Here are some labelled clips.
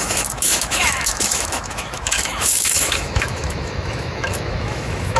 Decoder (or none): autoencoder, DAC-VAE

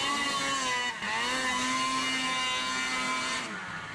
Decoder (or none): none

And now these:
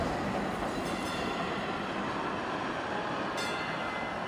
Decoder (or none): none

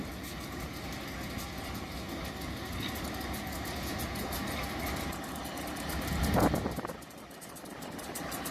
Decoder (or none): none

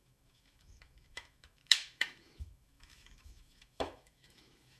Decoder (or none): autoencoder, DAC-VAE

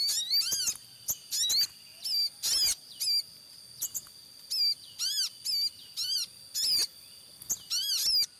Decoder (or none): none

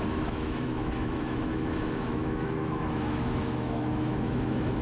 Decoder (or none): autoencoder, DAC-VAE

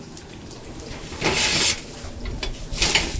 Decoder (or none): none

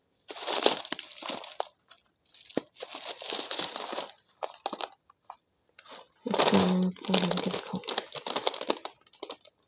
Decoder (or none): none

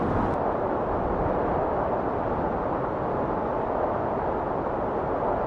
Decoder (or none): none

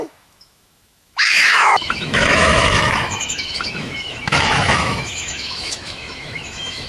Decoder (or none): autoencoder, DAC-VAE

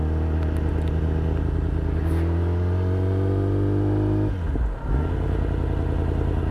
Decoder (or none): none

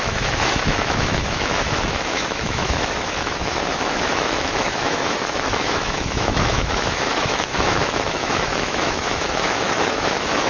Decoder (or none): autoencoder, DAC-VAE